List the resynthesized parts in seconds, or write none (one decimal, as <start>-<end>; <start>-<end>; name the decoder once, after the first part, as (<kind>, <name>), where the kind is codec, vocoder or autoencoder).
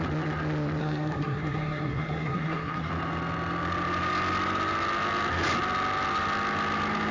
0.8-2.9 (codec, SNAC)